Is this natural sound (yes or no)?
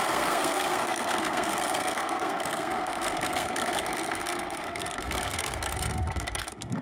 no